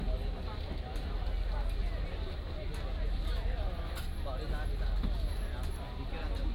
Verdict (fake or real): real